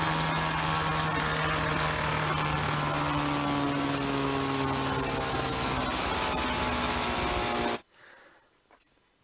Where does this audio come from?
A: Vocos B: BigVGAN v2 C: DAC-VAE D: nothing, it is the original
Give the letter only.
D